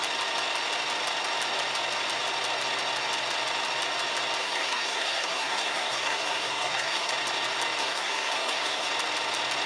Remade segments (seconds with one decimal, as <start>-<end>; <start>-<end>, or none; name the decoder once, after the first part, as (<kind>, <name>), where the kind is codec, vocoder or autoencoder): 4.4-7.1 (codec, SNAC); 7.8-8.9